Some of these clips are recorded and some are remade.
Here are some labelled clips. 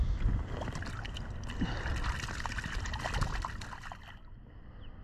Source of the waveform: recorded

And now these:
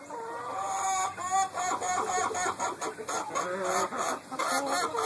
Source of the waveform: recorded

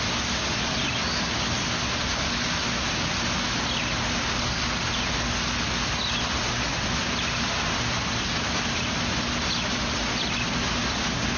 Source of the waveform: recorded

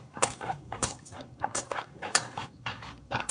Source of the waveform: remade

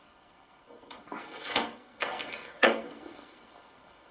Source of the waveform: remade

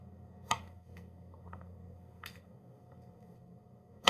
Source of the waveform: remade